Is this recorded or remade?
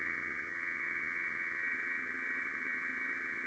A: remade